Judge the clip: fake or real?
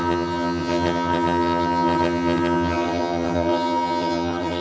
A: fake